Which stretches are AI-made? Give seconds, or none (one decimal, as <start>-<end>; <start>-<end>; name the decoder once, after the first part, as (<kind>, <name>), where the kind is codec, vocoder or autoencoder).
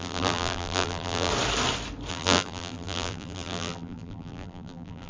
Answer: 0.0-1.3 (vocoder, BigVGAN v2); 2.1-5.1